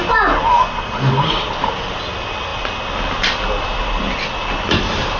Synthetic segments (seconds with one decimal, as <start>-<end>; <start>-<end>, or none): none